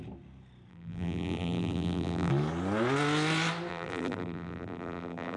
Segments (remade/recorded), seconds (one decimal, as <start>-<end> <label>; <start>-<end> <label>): 0.0-0.7 recorded; 0.7-2.3 remade; 2.3-3.7 recorded; 3.7-5.4 remade